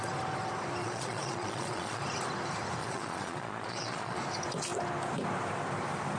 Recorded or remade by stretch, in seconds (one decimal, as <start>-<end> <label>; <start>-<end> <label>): 0.0-0.8 recorded; 0.8-2.0 remade; 2.0-2.8 recorded; 2.8-4.2 remade; 4.2-6.2 recorded